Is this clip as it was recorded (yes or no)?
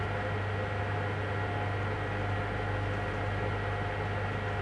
yes